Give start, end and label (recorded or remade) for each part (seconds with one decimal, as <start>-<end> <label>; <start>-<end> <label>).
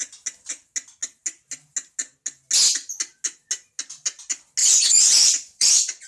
0.0-4.6 recorded; 4.6-6.1 remade